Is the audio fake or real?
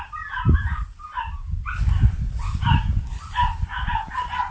real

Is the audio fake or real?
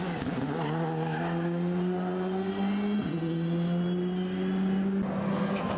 real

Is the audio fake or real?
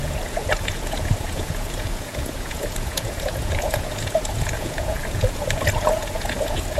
fake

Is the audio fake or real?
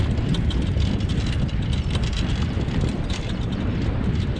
real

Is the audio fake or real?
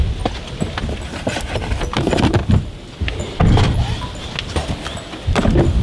real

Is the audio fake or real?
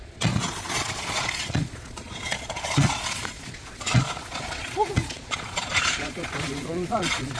fake